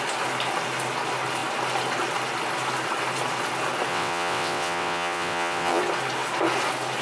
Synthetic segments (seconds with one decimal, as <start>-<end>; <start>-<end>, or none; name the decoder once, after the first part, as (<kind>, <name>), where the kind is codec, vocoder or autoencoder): 3.9-5.8 (vocoder, WaveNeXt)